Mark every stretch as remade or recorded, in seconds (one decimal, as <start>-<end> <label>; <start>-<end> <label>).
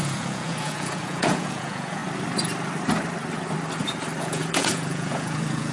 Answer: 0.0-2.0 remade; 2.0-4.2 recorded; 4.2-5.7 remade